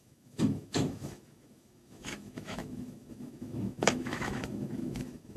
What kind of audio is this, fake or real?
fake